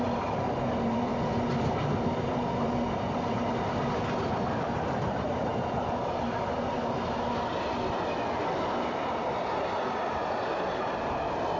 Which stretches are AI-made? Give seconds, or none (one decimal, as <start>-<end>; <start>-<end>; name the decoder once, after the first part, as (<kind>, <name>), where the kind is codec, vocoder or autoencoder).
none